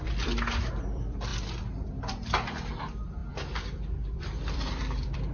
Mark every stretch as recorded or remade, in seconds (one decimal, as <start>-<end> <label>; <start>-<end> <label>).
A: 0.0-1.3 remade; 1.3-2.8 recorded; 2.8-5.3 remade